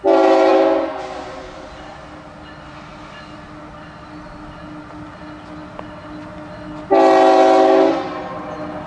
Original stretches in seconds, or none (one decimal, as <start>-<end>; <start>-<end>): 0.0-8.9

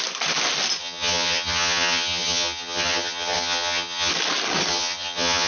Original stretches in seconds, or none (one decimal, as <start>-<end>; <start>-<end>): 0.0-0.8; 4.1-4.7

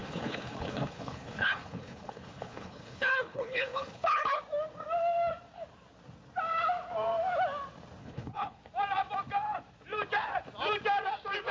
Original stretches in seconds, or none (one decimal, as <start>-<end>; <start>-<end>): 4.4-8.0; 8.6-11.5

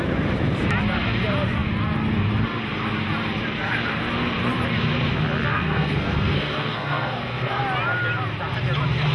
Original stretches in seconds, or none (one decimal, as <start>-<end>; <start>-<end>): 0.0-5.5; 7.6-9.1

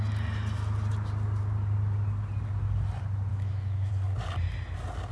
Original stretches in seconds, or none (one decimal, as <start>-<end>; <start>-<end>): 0.0-3.3; 3.9-5.1